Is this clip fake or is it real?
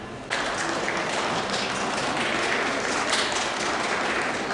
real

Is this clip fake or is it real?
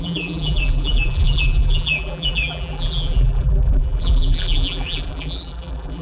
fake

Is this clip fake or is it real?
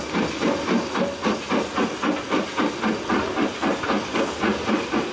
real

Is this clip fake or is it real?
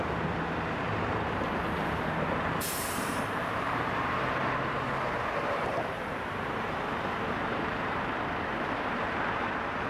fake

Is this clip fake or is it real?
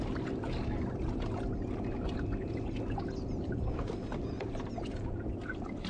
real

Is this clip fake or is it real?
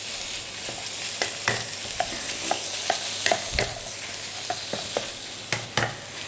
real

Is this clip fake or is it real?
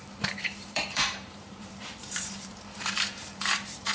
fake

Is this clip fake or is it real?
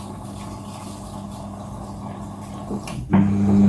real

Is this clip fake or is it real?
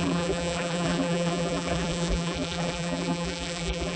fake